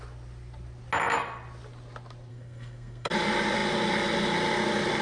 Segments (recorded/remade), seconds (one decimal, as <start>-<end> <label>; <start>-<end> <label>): 0.0-2.3 recorded; 2.3-3.1 remade; 3.1-5.0 recorded